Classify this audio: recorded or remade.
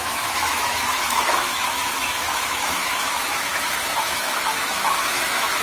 remade